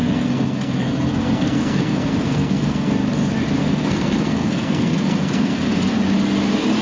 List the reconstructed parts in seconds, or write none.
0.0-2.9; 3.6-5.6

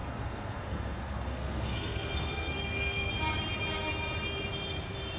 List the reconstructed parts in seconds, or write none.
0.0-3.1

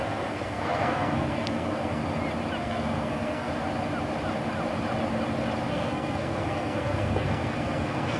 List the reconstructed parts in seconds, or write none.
0.0-2.0; 2.6-3.5; 5.7-8.2

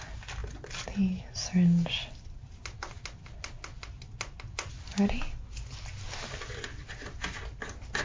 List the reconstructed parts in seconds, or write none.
none